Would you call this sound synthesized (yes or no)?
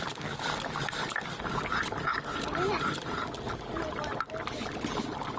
no